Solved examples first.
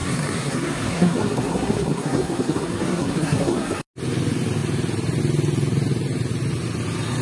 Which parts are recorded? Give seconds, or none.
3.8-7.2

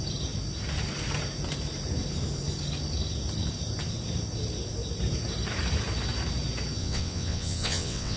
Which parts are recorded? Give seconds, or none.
0.0-6.8

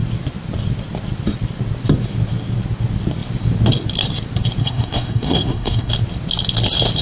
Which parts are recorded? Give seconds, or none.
0.0-4.6; 5.9-7.0

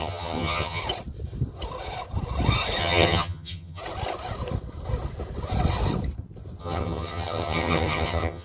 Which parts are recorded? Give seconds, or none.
0.8-2.8; 3.8-6.6